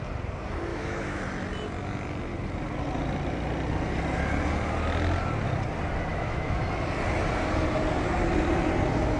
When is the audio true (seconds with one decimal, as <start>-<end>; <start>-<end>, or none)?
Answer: 0.0-0.7; 1.2-6.1; 6.6-9.2